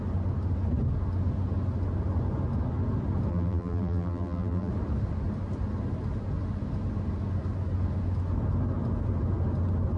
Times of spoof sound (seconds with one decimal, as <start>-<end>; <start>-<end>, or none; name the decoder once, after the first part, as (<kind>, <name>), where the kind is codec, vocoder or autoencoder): 3.3-4.7 (vocoder, BigVGAN v2)